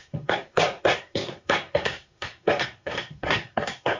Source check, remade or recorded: remade